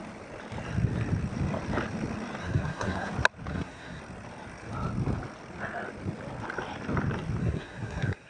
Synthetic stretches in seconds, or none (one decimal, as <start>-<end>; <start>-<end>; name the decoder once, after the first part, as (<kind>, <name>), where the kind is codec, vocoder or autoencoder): 2.4-3.1 (codec, SNAC); 3.5-4.0; 7.4-8.3